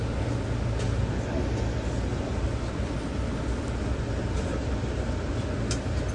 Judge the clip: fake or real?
real